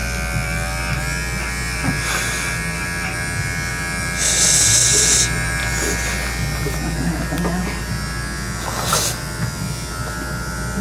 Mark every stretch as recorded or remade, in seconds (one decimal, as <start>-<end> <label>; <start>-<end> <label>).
0.0-10.8 recorded